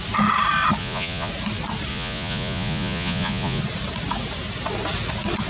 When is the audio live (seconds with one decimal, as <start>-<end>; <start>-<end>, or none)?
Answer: 0.0-0.8; 1.3-1.9; 3.6-5.5